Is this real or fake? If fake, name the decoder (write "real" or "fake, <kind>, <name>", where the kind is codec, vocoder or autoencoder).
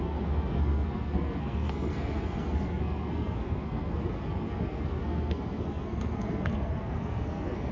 fake, codec, SNAC